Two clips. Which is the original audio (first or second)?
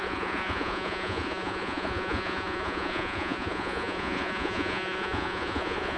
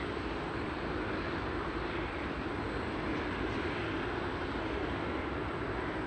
second